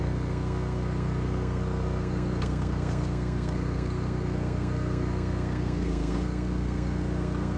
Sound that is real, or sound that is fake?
fake